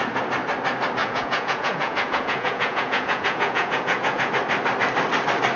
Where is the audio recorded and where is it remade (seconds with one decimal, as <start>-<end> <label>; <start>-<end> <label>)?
0.0-1.0 recorded; 1.0-4.3 remade; 4.3-5.6 recorded